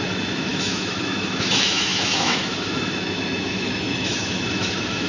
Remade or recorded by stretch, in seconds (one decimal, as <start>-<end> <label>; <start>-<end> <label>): 0.0-5.1 remade